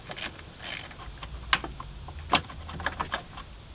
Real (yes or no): yes